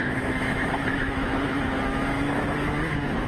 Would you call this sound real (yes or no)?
no